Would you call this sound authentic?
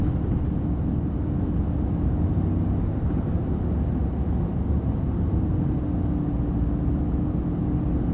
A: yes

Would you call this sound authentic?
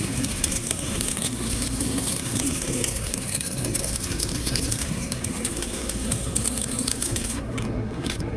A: no